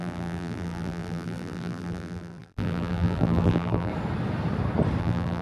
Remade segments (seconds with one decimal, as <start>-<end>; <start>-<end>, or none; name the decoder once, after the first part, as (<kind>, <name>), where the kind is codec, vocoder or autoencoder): 0.0-3.9 (vocoder, BigVGAN v2); 5.0-5.4